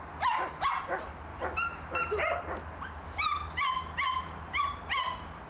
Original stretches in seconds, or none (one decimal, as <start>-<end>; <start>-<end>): 0.0-5.5